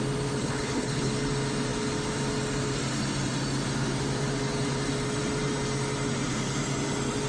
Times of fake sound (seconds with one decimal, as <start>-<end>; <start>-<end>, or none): 0.4-1.1